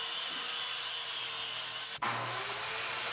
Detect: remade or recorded recorded